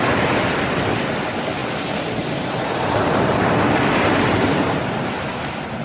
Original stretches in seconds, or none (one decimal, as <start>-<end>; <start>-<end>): 0.0-1.6; 5.1-5.8